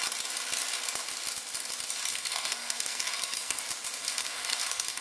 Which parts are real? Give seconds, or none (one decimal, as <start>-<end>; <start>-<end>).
0.0-2.1; 3.6-4.0